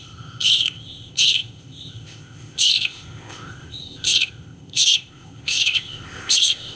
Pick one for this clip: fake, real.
fake